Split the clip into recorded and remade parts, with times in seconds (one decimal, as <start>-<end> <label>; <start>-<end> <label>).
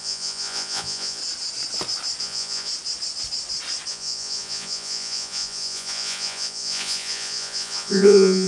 0.0-1.2 remade; 1.2-2.2 recorded; 2.2-2.7 remade; 2.7-3.9 recorded; 3.9-8.5 remade